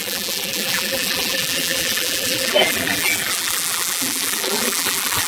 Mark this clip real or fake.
fake